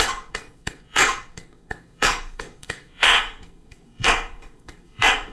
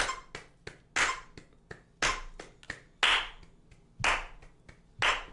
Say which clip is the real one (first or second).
second